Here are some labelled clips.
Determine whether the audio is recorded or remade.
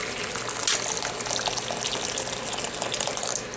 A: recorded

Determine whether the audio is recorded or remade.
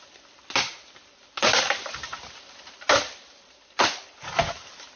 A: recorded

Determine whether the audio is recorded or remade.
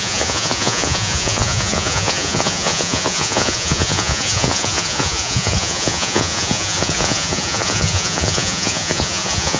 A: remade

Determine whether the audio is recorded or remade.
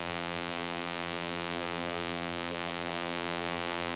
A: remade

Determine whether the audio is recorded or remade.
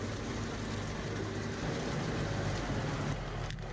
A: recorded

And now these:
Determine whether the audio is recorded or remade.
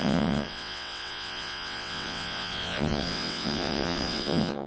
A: remade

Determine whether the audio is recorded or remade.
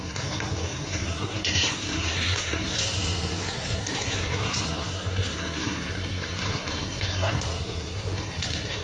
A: remade